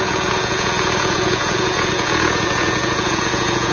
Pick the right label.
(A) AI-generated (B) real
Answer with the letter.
A